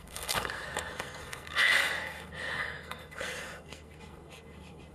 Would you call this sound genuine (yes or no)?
no